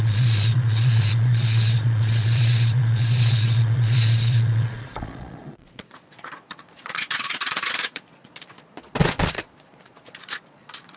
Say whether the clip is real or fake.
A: fake